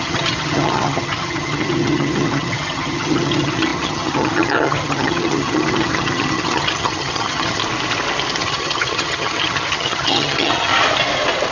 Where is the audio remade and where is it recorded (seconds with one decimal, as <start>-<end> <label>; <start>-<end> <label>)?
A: 0.0-7.6 remade; 7.6-8.4 recorded; 8.4-10.7 remade; 10.7-11.5 recorded